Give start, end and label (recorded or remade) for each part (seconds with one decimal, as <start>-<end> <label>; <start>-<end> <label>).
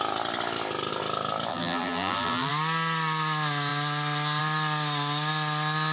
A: 0.0-1.5 recorded; 1.5-2.5 remade; 2.5-5.9 recorded